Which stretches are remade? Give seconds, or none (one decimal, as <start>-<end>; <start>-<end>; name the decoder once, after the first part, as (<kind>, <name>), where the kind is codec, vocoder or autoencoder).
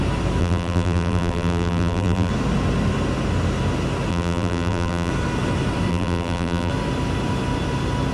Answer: 0.4-2.3 (vocoder, BigVGAN v2); 4.1-5.1; 5.9-6.7